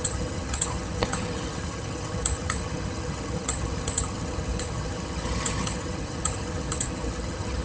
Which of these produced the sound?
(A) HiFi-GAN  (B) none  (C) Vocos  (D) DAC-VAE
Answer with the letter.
A